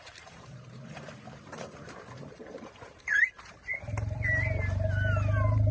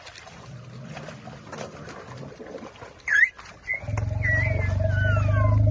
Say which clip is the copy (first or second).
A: first